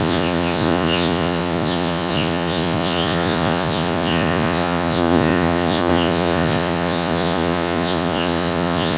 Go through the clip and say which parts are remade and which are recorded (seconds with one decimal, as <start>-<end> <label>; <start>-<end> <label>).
0.0-9.0 remade